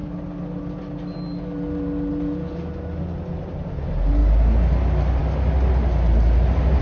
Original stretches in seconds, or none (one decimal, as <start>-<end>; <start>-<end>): 0.0-6.8